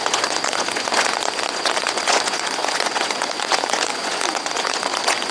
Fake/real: fake